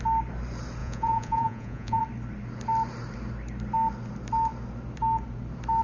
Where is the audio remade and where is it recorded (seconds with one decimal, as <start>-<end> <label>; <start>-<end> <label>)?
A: 0.0-0.8 recorded; 0.8-2.0 remade; 2.0-5.8 recorded